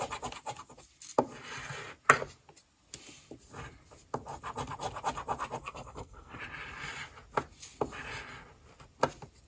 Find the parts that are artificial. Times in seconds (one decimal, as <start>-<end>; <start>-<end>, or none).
5.6-6.4